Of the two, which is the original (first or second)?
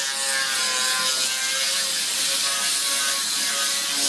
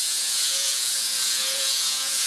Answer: first